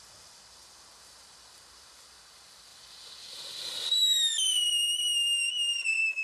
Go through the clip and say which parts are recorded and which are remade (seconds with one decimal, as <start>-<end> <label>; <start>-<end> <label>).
0.0-2.7 recorded; 2.7-4.7 remade; 4.7-6.2 recorded